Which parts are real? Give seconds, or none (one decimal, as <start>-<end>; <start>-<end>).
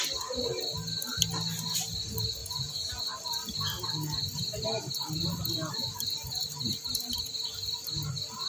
0.0-2.4; 3.0-8.5